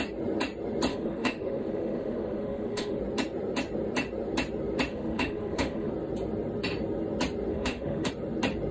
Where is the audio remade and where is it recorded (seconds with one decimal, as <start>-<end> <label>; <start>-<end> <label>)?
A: 0.0-0.9 recorded; 0.9-3.0 remade; 3.0-4.9 recorded; 4.9-5.9 remade; 5.9-7.5 recorded; 7.5-8.1 remade; 8.1-8.7 recorded